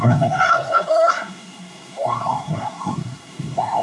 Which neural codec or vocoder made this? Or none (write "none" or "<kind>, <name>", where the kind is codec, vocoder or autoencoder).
codec, SNAC